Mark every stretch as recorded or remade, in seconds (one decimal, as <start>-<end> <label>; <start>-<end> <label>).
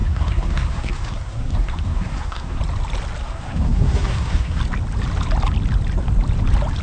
0.0-2.6 remade; 2.6-3.2 recorded; 3.2-4.6 remade; 4.6-6.8 recorded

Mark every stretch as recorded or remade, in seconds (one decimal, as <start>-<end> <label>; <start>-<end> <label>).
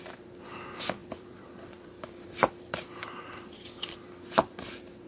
0.0-1.0 recorded; 1.0-4.1 remade; 4.1-5.1 recorded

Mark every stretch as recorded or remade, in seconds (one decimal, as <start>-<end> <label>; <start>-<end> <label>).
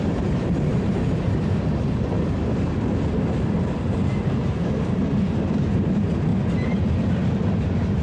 0.0-6.3 remade; 6.3-7.5 recorded; 7.5-8.0 remade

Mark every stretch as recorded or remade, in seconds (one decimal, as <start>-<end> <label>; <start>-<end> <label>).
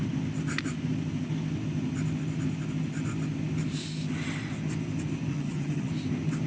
0.0-5.3 recorded; 5.3-5.9 remade; 5.9-6.5 recorded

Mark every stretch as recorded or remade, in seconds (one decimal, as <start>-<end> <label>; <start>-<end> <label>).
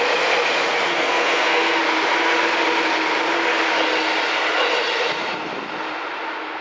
0.0-0.9 recorded; 0.9-1.8 remade; 1.8-6.6 recorded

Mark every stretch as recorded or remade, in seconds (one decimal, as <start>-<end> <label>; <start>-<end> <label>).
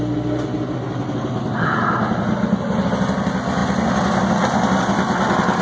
0.0-3.6 recorded; 3.6-5.6 remade